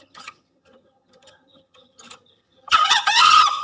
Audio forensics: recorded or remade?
remade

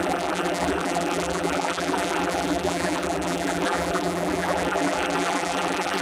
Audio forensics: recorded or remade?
remade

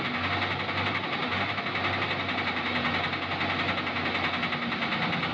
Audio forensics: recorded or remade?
recorded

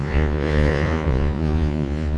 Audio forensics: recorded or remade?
remade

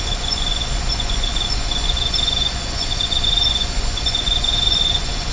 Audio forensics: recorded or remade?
remade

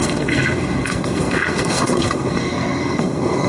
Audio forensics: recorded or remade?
remade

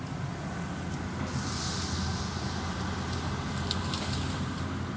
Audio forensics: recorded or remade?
recorded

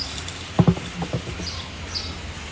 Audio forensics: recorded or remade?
recorded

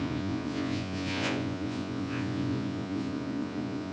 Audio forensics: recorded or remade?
remade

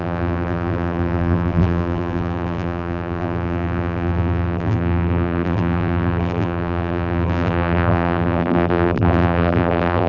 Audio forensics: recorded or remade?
remade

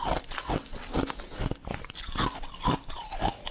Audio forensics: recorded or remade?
recorded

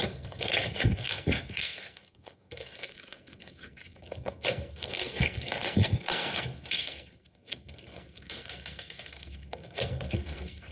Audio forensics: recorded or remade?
remade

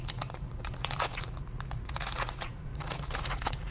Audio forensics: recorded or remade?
remade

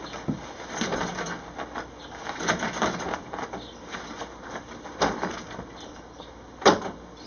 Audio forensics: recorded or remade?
recorded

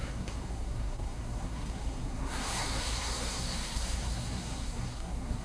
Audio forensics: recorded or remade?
remade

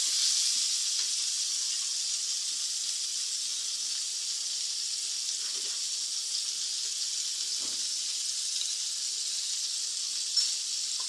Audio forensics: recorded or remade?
recorded